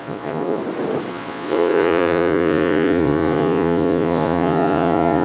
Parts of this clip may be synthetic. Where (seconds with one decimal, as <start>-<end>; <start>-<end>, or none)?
0.0-0.6; 1.1-5.2